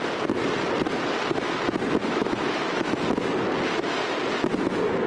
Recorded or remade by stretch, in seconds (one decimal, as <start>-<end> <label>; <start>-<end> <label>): 0.0-2.0 recorded; 2.0-3.0 remade; 3.0-5.1 recorded